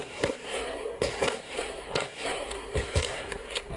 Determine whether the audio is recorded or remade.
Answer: remade